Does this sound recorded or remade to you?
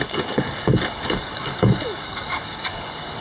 remade